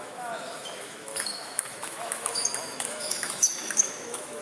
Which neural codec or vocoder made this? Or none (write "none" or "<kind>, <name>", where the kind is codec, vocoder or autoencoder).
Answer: autoencoder, DAC-VAE